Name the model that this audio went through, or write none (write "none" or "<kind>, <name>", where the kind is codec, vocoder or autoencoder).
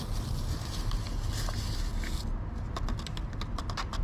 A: none